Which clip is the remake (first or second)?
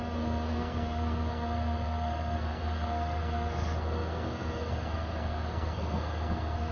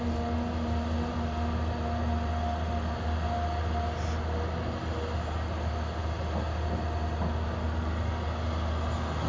first